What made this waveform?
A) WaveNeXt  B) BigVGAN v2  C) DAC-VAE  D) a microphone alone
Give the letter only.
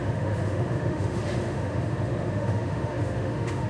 C